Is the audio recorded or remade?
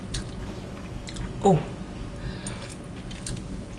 recorded